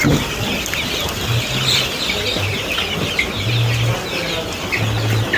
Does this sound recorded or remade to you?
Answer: recorded